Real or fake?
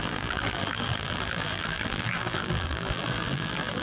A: fake